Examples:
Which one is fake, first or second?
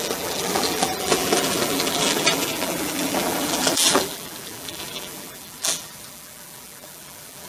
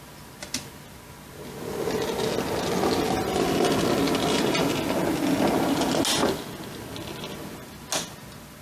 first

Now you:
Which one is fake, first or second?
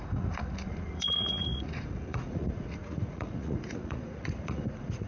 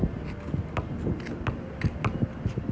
first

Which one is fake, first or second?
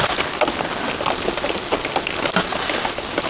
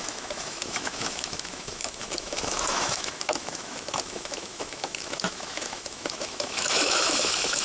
second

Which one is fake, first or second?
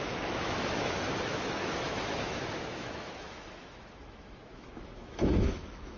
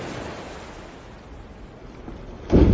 first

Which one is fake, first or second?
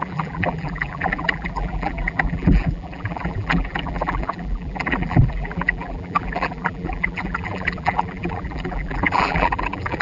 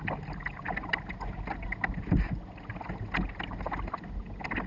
first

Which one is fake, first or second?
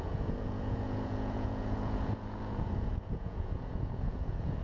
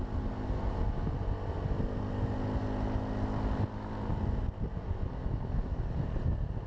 first